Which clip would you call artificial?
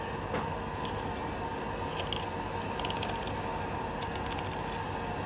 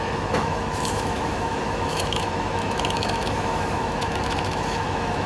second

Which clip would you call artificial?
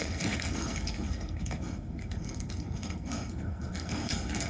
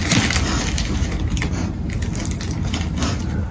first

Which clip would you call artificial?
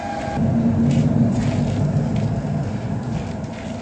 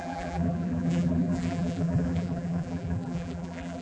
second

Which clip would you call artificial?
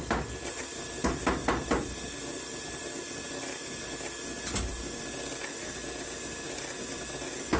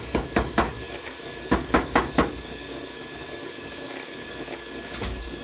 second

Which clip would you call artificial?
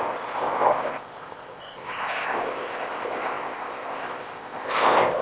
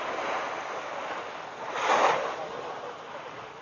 first